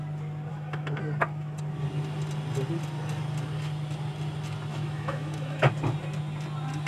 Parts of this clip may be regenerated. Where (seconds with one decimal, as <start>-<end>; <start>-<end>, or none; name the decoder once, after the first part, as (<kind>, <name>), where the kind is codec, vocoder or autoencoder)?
0.5-1.0 (autoencoder, DAC-VAE); 4.7-5.7